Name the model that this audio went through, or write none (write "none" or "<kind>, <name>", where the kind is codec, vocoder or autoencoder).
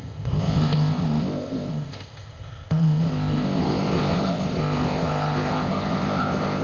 codec, ZipCodec